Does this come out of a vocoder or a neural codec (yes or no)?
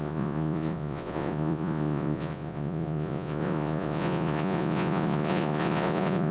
yes